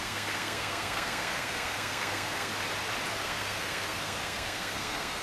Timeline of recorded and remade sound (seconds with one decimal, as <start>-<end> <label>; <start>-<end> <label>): 0.0-2.5 remade; 2.5-3.2 recorded; 3.2-5.2 remade